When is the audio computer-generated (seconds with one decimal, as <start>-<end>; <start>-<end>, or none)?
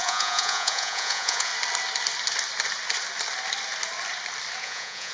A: 0.0-1.5; 4.6-5.1